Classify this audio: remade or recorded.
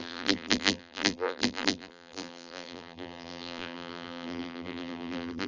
remade